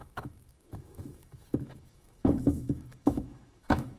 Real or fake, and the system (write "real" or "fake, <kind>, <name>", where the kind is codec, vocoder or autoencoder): fake, autoencoder, DAC-VAE